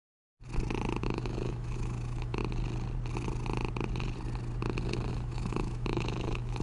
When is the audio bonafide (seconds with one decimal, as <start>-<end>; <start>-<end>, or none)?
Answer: 0.0-1.0; 2.4-5.1